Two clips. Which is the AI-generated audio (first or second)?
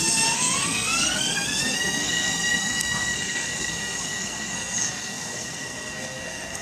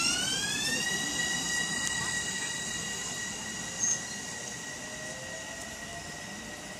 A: first